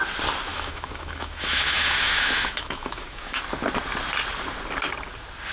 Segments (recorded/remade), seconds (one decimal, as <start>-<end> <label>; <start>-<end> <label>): 0.0-0.5 recorded; 0.5-3.4 remade; 3.4-5.5 recorded